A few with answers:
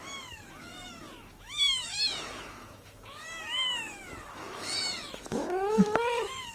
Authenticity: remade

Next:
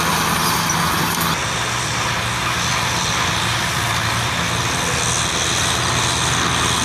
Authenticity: recorded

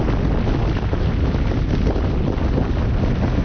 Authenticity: recorded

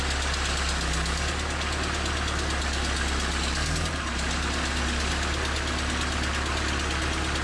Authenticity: recorded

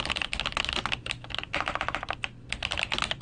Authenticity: recorded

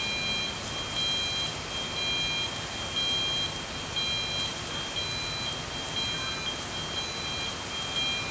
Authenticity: recorded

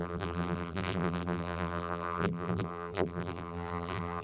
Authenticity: remade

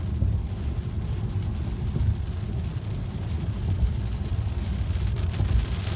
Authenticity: recorded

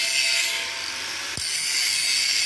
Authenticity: recorded